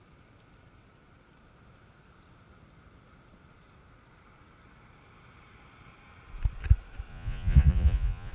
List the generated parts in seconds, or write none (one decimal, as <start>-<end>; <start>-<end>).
7.1-8.3